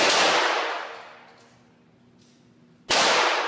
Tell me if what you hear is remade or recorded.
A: recorded